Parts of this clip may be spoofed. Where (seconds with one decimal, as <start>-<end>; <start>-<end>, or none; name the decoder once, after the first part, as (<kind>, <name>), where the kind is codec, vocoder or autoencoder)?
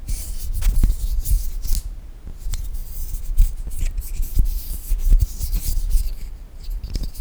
2.8-7.2 (vocoder, BigVGAN v2)